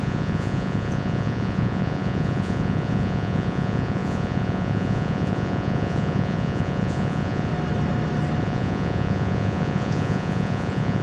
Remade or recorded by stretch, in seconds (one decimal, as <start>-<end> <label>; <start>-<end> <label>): 0.0-7.5 remade; 7.5-8.4 recorded; 8.4-11.0 remade